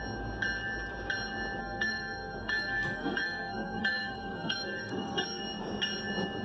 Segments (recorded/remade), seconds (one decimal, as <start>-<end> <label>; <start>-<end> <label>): 0.0-1.6 recorded; 1.6-5.4 remade; 5.4-6.4 recorded

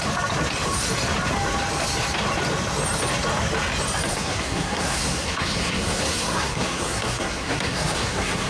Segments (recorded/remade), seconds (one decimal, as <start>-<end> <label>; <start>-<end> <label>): 0.0-4.1 recorded; 4.1-8.5 remade

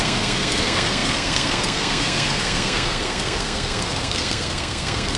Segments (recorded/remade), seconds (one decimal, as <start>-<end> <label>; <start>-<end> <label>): 0.0-5.2 remade